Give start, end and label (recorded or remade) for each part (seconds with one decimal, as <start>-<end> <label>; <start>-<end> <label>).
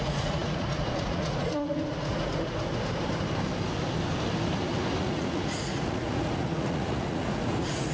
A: 0.0-2.3 remade; 2.3-5.0 recorded; 5.0-7.9 remade